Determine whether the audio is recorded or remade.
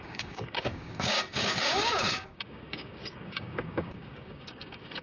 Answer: remade